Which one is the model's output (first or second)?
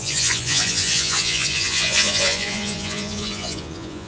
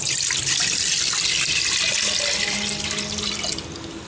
first